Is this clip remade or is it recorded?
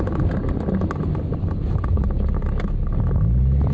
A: recorded